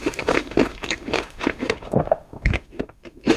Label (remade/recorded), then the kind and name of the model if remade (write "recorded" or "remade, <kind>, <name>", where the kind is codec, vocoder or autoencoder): remade, autoencoder, DAC-VAE